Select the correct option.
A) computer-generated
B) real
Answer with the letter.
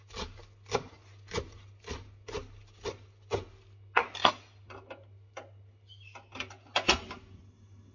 B